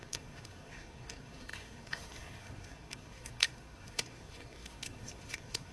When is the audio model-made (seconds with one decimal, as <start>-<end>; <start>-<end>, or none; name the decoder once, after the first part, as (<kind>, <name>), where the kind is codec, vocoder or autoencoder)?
0.0-5.7 (codec, SNAC)